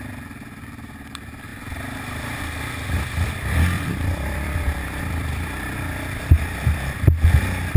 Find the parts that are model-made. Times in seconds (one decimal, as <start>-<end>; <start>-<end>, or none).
1.5-6.2

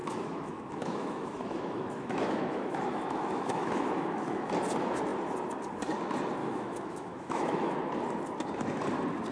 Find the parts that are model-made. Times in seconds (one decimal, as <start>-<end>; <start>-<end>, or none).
0.0-4.5; 6.4-7.7